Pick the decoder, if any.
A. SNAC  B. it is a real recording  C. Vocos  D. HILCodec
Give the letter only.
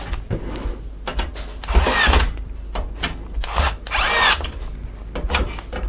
B